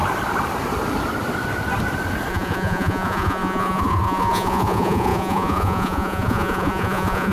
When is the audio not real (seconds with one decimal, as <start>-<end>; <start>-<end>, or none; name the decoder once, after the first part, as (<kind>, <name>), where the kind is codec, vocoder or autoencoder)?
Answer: 2.3-7.3 (vocoder, Vocos)